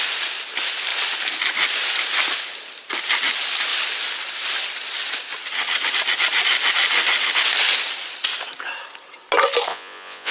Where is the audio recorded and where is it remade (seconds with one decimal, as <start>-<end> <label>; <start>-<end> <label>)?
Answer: 0.0-9.7 recorded; 9.7-10.3 remade